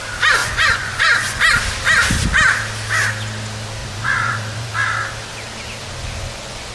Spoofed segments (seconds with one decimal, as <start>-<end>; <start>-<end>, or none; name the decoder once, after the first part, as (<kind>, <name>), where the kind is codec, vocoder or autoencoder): 0.4-1.4 (vocoder, Vocos); 3.8-4.7; 5.8-6.7

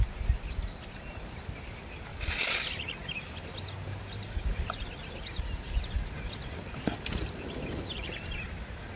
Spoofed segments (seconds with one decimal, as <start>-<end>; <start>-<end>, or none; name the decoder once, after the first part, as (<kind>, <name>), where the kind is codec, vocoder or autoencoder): 2.1-2.6 (vocoder, Vocos)

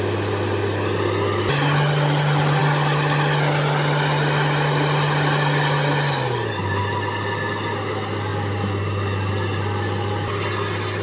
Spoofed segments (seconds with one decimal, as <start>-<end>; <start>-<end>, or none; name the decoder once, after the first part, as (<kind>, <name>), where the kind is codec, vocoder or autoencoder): none